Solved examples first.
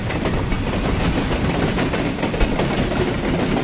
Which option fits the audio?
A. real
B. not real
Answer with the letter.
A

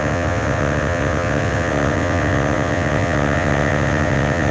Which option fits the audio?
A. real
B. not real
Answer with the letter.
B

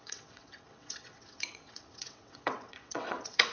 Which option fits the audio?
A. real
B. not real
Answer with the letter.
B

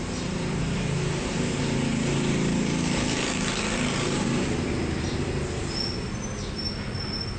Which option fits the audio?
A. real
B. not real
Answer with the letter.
A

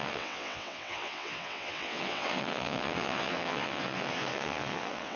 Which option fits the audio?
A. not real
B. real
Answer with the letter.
A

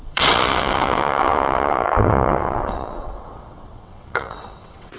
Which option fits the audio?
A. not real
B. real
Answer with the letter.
A